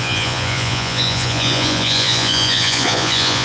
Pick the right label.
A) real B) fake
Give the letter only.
B